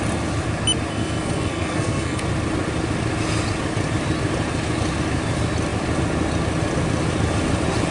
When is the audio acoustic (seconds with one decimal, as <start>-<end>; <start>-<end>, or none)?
0.0-0.9; 2.2-7.9